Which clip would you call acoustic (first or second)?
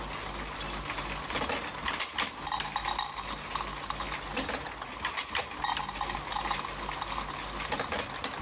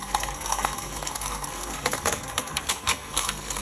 first